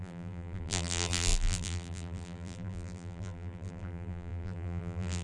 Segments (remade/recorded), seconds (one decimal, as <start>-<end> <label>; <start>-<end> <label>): 0.0-5.2 remade